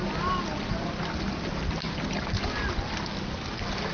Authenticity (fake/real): real